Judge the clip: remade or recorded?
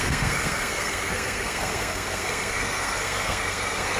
remade